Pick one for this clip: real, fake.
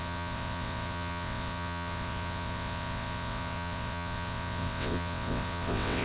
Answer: fake